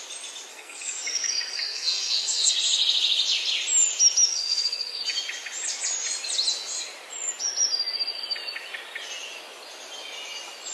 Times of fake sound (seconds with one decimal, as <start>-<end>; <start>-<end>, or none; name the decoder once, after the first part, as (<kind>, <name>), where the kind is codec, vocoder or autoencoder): 0.5-2.5 (codec, SNAC); 4.3-5.0